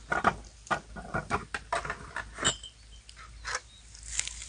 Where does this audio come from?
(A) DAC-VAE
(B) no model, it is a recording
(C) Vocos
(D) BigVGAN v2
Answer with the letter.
B